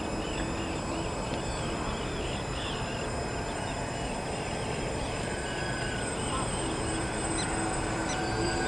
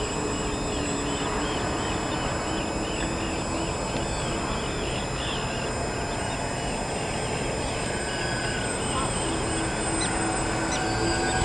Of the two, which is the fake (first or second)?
first